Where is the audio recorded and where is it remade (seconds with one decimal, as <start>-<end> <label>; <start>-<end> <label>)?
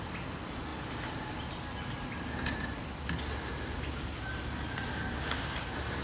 0.0-6.0 recorded